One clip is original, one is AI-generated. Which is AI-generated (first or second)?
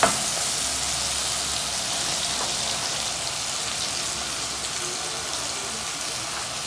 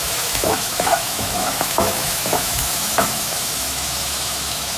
second